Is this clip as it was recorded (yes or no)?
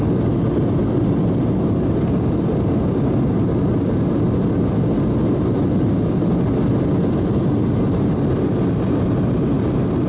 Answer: yes